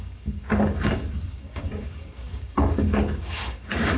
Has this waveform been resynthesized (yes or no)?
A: yes